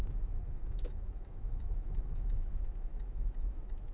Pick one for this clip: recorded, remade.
remade